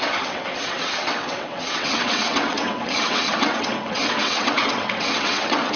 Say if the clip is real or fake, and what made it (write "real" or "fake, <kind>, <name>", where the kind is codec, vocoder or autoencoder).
fake, vocoder, WaveNeXt